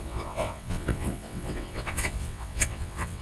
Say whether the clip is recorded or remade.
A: remade